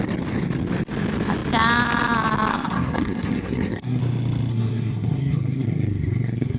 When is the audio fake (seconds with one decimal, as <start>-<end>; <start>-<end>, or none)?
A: 2.5-4.0; 4.5-6.6